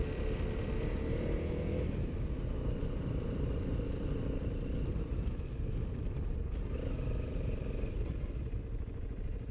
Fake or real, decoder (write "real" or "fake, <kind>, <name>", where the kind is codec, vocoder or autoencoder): real